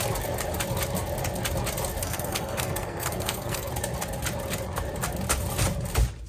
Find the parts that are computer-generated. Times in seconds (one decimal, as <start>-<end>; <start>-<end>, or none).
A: 2.0-3.7